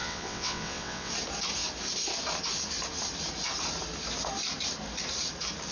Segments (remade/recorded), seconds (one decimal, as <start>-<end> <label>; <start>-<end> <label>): 0.0-1.1 remade; 1.1-5.7 recorded